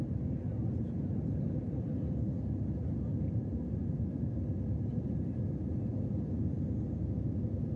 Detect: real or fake real